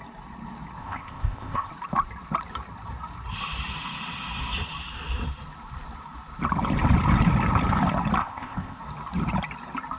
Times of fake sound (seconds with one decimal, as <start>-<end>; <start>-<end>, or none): 0.8-1.7; 8.2-8.8